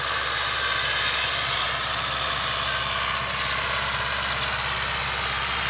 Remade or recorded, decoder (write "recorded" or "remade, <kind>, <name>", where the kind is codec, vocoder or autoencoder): recorded